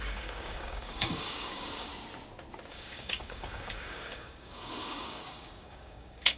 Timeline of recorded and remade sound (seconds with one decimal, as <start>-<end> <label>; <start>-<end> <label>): 0.0-1.9 remade; 1.9-2.7 recorded; 2.7-6.4 remade